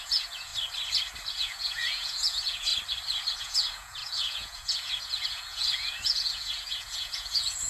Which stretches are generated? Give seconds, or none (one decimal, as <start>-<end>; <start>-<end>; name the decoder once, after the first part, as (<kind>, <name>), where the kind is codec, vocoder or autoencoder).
0.0-0.5 (vocoder, Vocos); 1.3-2.7; 3.4-7.7